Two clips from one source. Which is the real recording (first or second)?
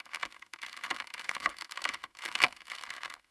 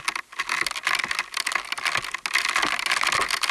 second